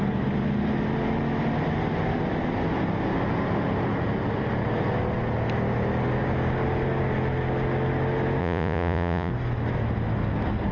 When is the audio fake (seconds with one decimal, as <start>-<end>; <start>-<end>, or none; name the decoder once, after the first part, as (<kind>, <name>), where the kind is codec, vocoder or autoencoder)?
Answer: 8.4-9.3 (vocoder, Vocos)